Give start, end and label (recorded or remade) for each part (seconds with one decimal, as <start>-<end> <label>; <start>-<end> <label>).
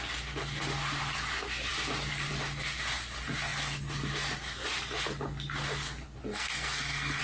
0.0-6.3 recorded; 6.3-7.2 remade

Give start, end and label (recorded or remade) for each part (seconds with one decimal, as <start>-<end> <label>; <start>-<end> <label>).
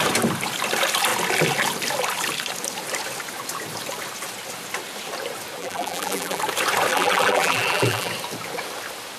0.0-5.6 recorded; 5.6-6.4 remade; 6.4-6.9 recorded; 6.9-8.1 remade; 8.1-9.2 recorded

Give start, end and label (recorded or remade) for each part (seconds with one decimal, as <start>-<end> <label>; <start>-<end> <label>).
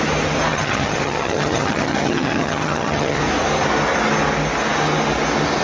0.0-0.5 recorded; 0.5-3.2 remade; 3.2-5.6 recorded